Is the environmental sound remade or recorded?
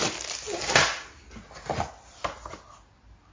recorded